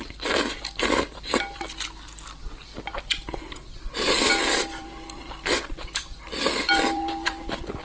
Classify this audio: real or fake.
fake